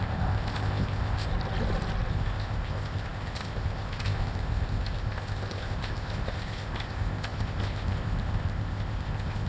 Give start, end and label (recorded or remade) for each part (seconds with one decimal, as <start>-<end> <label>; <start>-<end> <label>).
0.0-1.3 remade; 1.3-2.1 recorded; 2.1-9.5 remade

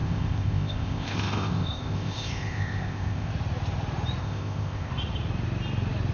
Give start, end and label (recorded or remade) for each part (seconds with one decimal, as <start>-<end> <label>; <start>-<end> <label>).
0.0-3.3 remade; 3.3-4.2 recorded; 4.2-4.9 remade; 4.9-6.1 recorded

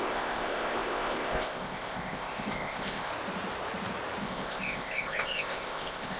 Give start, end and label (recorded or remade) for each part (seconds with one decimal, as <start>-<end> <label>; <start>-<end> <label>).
0.0-3.1 remade; 3.1-4.2 recorded; 4.2-6.2 remade